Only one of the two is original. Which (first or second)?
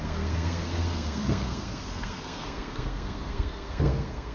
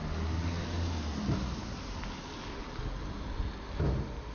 second